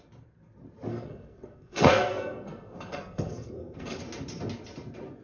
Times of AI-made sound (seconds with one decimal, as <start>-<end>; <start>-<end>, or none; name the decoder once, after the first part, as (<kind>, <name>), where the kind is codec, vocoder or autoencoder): 0.9-4.0 (codec, SNAC)